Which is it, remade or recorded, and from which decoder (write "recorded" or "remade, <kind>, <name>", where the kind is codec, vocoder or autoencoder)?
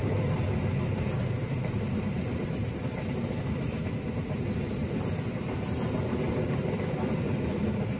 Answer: recorded